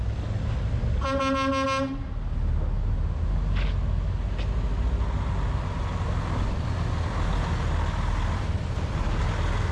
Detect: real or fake real